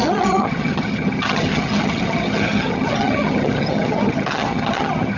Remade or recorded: remade